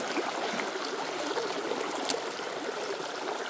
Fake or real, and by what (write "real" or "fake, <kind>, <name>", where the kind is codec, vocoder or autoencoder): real